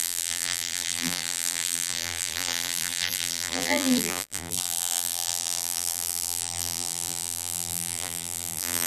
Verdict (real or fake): fake